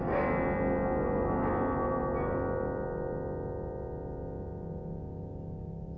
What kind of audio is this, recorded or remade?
recorded